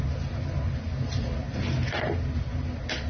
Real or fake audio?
real